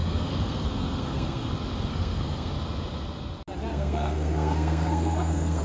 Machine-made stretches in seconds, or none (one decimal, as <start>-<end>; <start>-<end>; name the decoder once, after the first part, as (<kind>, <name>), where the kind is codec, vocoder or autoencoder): 0.0-1.5 (codec, SNAC); 1.9-2.5; 3.7-5.6